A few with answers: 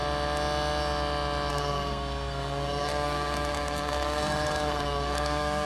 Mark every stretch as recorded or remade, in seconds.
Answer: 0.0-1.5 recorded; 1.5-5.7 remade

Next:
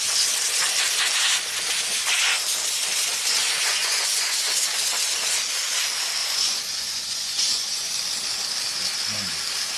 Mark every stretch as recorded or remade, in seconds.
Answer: 0.0-3.4 recorded; 3.4-4.5 remade; 4.5-6.2 recorded; 6.2-7.9 remade; 7.9-9.8 recorded

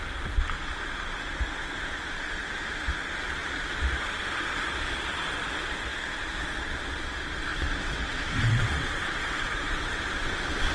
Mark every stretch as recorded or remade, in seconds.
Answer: 0.0-7.5 recorded; 7.5-10.0 remade; 10.0-10.7 recorded

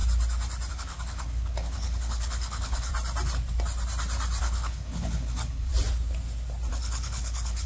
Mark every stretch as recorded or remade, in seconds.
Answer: 0.0-0.7 recorded; 0.7-2.9 remade; 2.9-4.4 recorded; 4.4-5.7 remade; 5.7-6.7 recorded; 6.7-7.7 remade

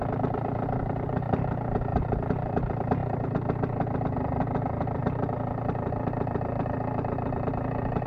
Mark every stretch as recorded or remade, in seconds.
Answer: 0.0-8.1 recorded

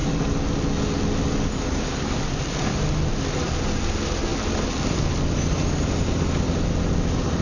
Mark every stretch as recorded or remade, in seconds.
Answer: 0.0-7.4 recorded

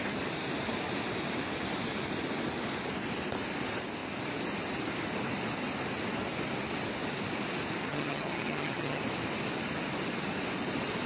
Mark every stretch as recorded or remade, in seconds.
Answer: 0.0-7.8 recorded; 7.8-9.0 remade; 9.0-11.1 recorded